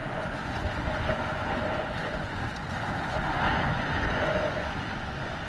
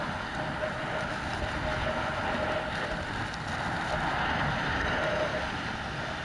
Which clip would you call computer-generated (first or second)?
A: first